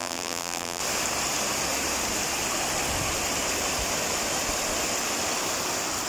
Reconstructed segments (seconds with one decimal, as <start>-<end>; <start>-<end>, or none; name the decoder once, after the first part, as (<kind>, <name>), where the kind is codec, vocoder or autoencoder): 0.0-0.8 (vocoder, BigVGAN v2)